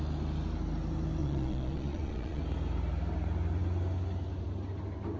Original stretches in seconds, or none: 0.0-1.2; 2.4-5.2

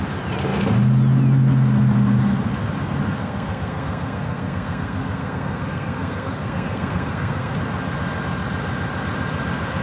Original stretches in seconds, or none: 0.0-3.2; 7.5-9.8